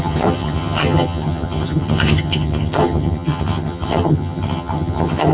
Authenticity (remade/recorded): remade